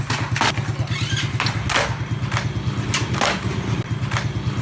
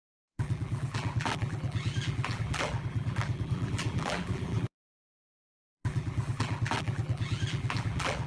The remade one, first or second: second